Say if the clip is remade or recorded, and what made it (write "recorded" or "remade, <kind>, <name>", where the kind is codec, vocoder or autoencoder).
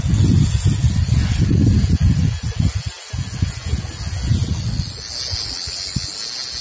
recorded